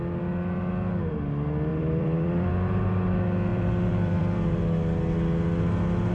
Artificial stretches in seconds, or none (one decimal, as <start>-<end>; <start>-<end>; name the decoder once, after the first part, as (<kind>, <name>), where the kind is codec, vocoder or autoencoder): 1.7-2.5 (vocoder, BigVGAN v2); 3.5-4.6